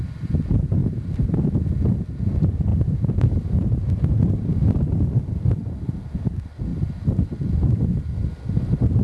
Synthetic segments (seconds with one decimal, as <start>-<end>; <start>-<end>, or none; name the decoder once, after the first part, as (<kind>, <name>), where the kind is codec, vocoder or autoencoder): 0.8-1.6 (vocoder, BigVGAN v2); 2.7-4.4